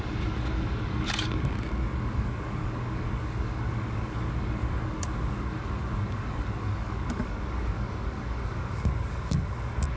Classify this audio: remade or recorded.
remade